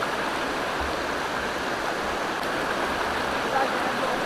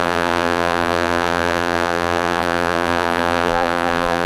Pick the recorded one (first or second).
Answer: first